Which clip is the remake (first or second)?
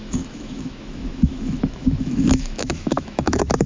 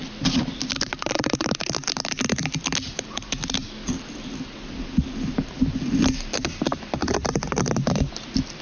first